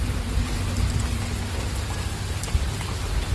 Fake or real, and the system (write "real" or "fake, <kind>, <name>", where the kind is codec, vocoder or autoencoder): real